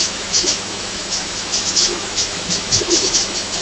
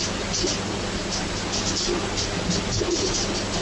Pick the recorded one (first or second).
second